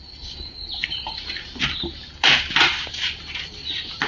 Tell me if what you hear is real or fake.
real